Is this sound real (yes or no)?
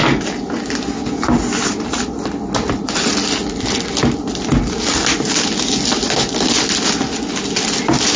yes